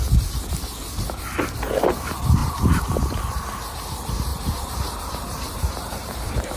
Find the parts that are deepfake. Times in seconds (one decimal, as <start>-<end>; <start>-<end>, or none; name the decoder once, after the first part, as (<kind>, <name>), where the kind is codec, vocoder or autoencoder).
2.4-3.0 (vocoder, BigVGAN v2); 4.3-6.6